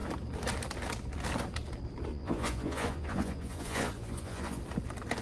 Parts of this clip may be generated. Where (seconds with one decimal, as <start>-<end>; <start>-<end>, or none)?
2.1-4.6